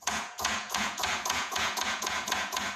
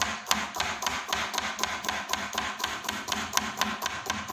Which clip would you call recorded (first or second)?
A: second